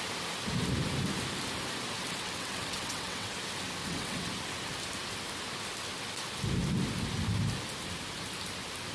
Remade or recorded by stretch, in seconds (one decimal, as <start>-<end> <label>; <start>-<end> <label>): 0.0-2.0 recorded; 2.0-3.3 remade; 3.3-3.8 recorded; 3.8-4.3 remade; 4.3-8.9 recorded